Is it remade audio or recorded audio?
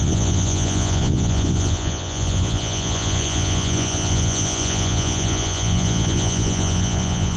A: remade